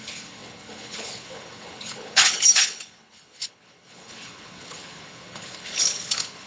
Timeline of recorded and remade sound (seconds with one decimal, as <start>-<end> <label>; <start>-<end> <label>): 0.0-6.5 remade